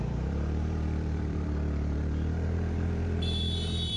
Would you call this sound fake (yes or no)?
yes